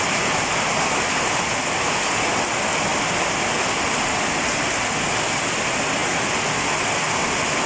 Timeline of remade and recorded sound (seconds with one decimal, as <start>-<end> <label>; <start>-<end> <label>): 0.0-7.7 recorded